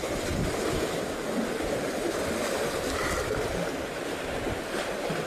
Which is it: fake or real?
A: real